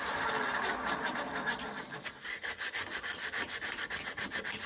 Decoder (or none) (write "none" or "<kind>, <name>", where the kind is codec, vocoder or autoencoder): vocoder, BigVGAN v2